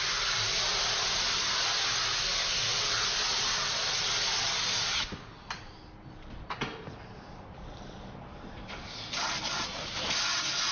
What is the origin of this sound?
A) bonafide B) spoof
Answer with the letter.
A